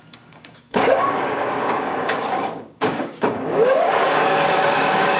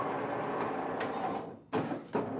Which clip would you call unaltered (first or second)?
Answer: second